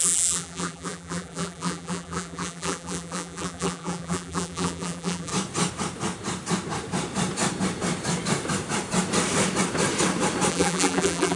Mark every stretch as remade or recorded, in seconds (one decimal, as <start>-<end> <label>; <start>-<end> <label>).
0.0-5.3 remade; 5.3-10.5 recorded; 10.5-11.4 remade